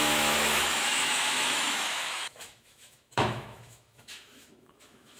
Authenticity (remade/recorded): remade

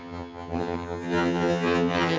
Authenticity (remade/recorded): remade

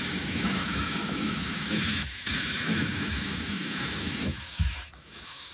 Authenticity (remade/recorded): remade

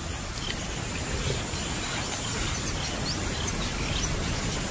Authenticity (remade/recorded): recorded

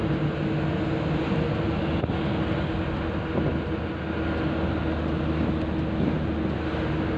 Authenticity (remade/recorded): recorded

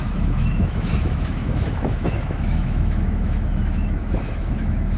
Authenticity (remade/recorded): remade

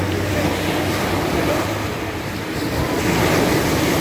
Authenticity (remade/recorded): recorded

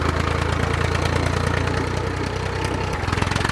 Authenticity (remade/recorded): recorded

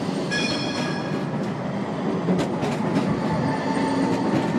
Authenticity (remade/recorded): recorded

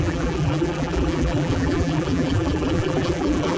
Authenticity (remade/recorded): remade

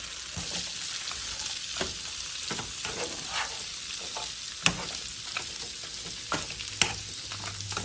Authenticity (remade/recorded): recorded